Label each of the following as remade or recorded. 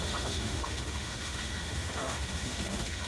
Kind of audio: remade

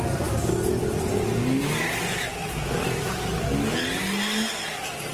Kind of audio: recorded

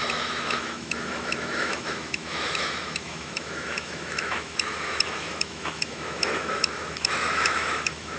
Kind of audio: remade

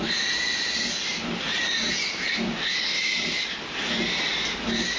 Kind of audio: recorded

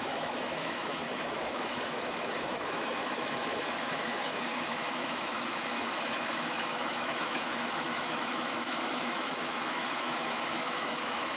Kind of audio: remade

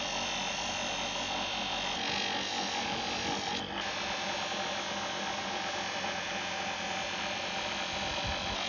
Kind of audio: recorded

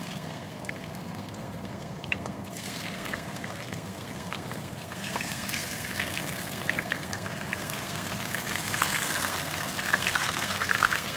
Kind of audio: remade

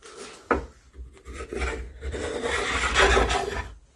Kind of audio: recorded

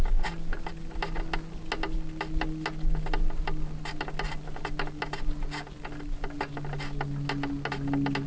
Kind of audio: recorded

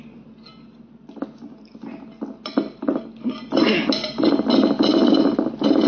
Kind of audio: recorded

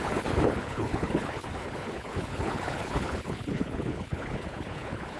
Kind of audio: remade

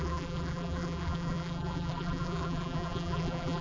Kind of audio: remade